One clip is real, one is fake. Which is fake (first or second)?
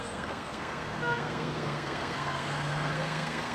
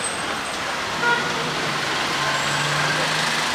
first